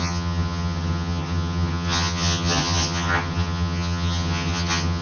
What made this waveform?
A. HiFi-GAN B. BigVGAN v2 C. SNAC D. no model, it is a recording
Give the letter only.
A